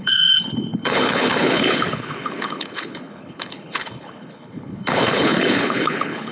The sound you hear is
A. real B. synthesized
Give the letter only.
B